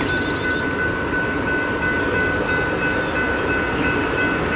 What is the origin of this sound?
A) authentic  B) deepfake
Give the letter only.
A